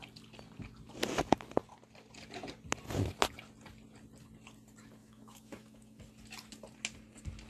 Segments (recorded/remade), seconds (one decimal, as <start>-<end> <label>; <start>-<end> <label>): 0.0-5.0 recorded; 5.0-6.0 remade; 6.0-7.5 recorded